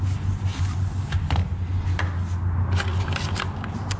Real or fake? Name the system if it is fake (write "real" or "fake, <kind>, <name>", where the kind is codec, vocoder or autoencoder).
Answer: real